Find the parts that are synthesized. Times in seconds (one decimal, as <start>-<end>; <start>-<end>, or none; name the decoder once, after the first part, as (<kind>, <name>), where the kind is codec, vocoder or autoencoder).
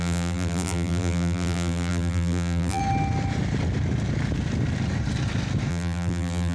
0.0-2.8 (vocoder, BigVGAN v2); 5.7-6.5